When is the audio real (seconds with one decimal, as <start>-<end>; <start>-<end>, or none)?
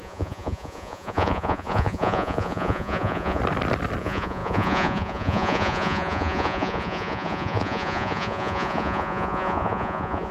3.4-4.0